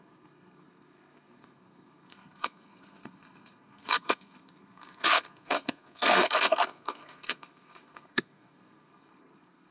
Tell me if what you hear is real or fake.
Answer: fake